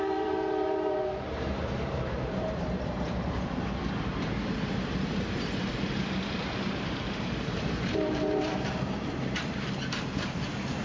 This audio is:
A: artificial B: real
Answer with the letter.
A